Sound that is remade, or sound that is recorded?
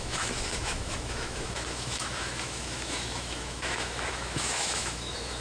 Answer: remade